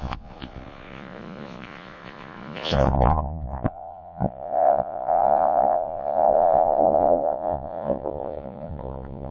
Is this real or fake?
fake